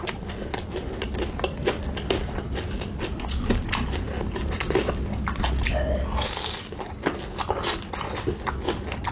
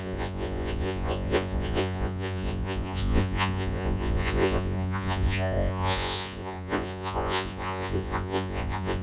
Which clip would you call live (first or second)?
first